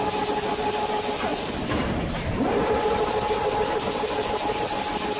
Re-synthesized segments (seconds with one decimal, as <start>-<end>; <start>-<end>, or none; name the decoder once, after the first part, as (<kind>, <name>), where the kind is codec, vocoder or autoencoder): 1.3-3.9 (vocoder, BigVGAN v2)